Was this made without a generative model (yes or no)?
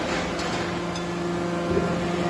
yes